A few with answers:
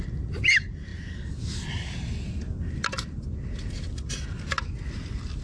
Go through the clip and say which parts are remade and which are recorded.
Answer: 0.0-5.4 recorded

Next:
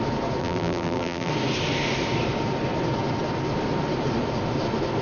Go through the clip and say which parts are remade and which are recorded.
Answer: 0.0-0.4 recorded; 0.4-1.3 remade; 1.3-5.0 recorded

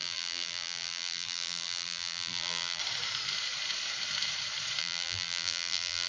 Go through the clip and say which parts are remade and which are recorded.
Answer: 0.0-2.8 remade; 2.8-4.8 recorded; 4.8-6.1 remade

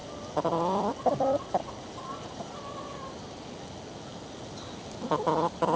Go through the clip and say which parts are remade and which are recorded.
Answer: 0.0-3.5 remade; 3.5-5.8 recorded

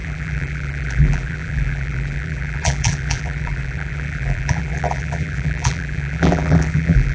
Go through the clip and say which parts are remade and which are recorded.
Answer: 0.0-7.1 remade

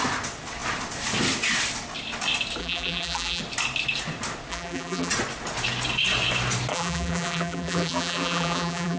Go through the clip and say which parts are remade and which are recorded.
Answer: 0.0-2.6 recorded; 2.6-3.4 remade; 3.4-4.5 recorded; 4.5-5.1 remade; 5.1-6.7 recorded; 6.7-9.0 remade

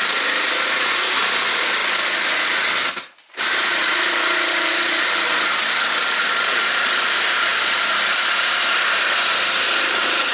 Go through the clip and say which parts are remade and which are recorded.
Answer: 0.0-7.5 recorded; 7.5-8.1 remade; 8.1-10.3 recorded

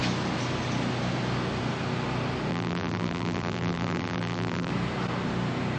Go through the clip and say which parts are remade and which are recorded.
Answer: 0.0-2.5 recorded; 2.5-4.7 remade; 4.7-5.8 recorded